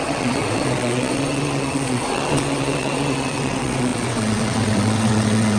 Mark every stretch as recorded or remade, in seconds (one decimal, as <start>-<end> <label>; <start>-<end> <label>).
0.0-5.6 remade